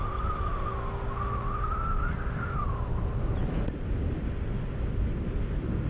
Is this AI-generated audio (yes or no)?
no